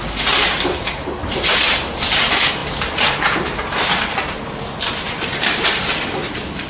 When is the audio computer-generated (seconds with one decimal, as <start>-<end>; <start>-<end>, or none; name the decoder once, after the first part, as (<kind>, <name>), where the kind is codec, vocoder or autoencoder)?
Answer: 1.2-2.2 (vocoder, BigVGAN v2); 2.6-5.8